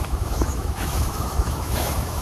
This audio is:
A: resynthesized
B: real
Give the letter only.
A